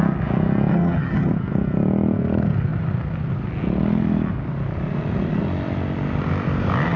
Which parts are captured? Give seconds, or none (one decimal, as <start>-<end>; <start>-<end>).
0.0-0.7; 1.3-7.0